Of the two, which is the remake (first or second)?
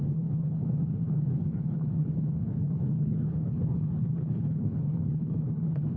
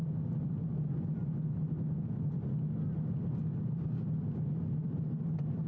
first